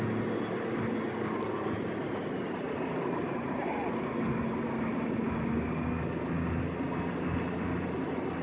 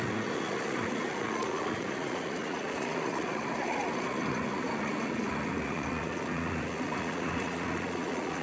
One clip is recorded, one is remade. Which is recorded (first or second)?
first